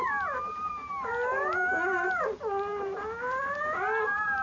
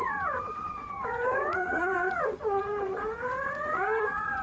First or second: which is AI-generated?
second